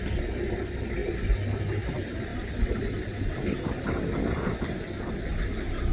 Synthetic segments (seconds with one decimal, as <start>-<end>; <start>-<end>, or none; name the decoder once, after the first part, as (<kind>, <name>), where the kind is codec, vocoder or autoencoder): none